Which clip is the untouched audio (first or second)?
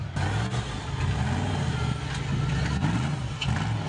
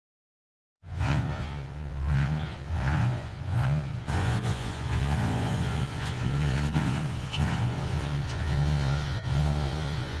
first